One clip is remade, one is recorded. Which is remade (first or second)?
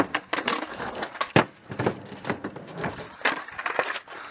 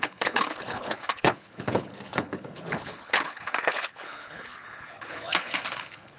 second